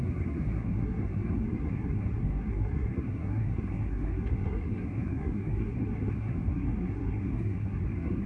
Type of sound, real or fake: fake